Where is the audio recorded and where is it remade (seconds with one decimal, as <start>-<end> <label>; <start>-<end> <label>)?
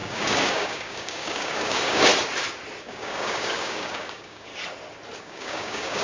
0.0-2.1 remade; 2.1-2.8 recorded; 2.8-4.5 remade; 4.5-5.2 recorded; 5.2-6.0 remade